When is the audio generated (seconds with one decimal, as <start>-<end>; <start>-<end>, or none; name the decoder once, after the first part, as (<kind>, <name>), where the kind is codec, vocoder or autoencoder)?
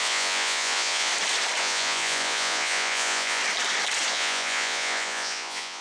0.0-1.1 (vocoder, Vocos); 1.6-3.4; 4.1-5.8